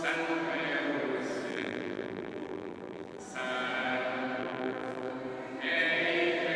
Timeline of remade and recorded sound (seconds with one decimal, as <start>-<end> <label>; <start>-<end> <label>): 0.0-1.5 recorded; 1.5-3.2 remade; 3.2-4.4 recorded; 4.4-5.1 remade; 5.1-6.6 recorded